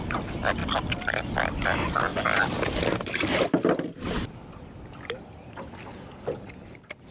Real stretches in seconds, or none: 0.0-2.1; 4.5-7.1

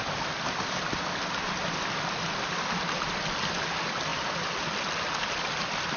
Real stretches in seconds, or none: 0.0-6.0

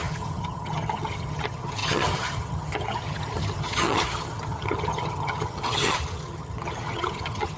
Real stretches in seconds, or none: none

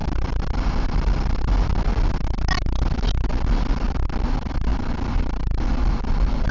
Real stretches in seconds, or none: 0.0-6.5

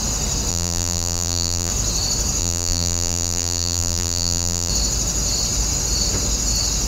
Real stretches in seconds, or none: 0.0-0.5; 1.7-2.4; 4.7-6.9

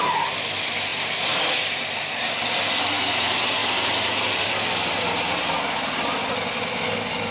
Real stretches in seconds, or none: 0.0-7.3

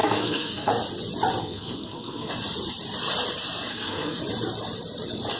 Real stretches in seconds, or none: 0.7-1.4; 2.3-3.7; 4.2-5.4